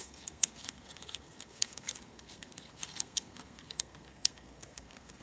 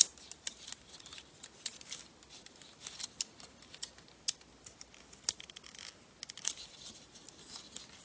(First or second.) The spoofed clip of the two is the first